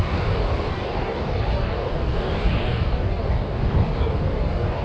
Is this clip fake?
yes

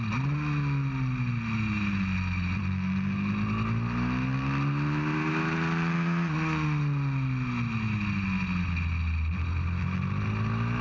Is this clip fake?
no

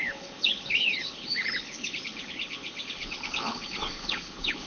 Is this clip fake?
yes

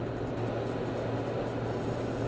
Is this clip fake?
no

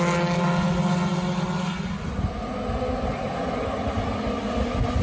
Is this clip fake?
no